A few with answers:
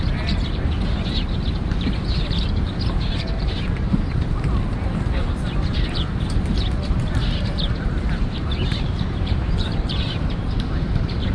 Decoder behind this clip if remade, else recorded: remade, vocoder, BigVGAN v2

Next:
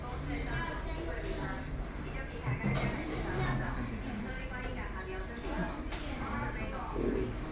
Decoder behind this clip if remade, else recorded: recorded